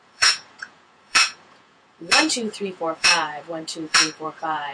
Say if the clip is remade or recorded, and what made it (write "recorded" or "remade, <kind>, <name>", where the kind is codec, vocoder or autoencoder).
remade, vocoder, Vocos